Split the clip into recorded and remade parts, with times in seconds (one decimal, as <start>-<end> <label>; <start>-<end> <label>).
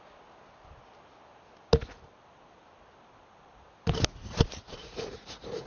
0.0-4.8 recorded; 4.8-5.7 remade